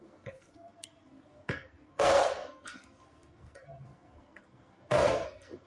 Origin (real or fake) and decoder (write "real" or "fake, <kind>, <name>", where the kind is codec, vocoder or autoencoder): fake, codec, SNAC